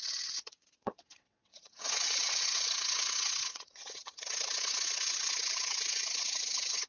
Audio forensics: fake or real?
fake